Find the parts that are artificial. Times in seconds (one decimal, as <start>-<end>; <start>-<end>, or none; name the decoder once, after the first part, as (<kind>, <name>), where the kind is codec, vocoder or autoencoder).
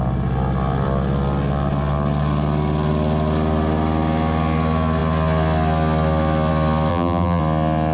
6.9-7.4 (vocoder, BigVGAN v2)